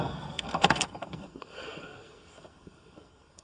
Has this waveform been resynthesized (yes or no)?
yes